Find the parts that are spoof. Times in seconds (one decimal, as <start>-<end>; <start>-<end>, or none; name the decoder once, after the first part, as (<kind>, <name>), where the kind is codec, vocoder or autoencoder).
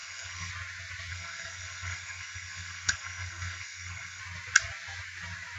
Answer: 0.0-0.5 (codec, SNAC); 1.1-4.2